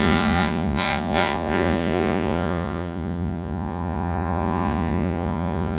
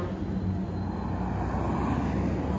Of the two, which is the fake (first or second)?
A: first